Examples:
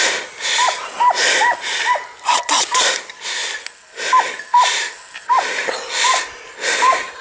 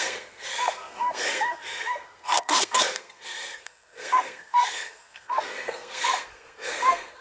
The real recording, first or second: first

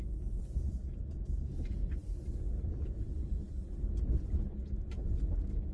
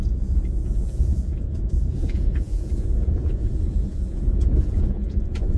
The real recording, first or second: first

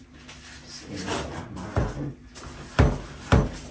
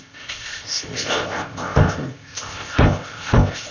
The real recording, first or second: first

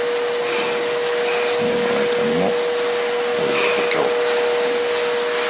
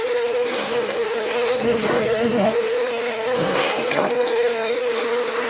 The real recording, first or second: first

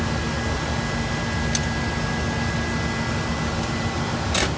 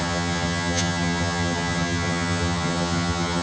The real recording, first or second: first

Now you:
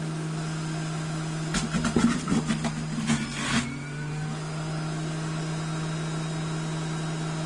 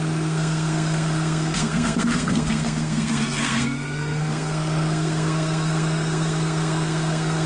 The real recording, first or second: first